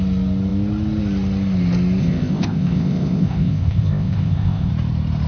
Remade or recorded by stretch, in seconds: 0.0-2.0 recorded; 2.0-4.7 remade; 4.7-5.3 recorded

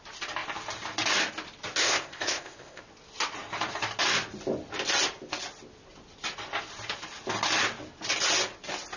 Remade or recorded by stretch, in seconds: 0.0-1.8 recorded; 1.8-2.8 remade; 2.8-9.0 recorded

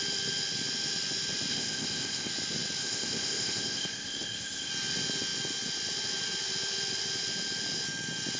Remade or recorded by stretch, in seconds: 0.0-1.5 recorded; 1.5-2.3 remade; 2.3-2.8 recorded; 2.8-4.7 remade; 4.7-8.4 recorded